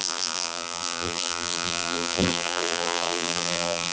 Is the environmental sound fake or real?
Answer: fake